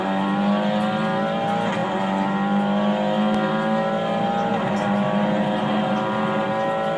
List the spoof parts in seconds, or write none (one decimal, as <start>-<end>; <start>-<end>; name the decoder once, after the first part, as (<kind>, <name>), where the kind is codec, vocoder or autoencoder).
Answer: none